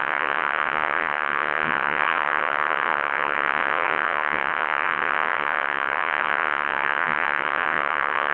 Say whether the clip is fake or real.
fake